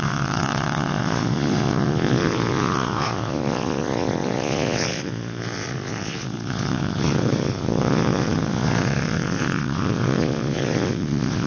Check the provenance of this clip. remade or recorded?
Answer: remade